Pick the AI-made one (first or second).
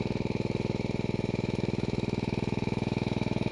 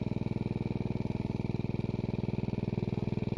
first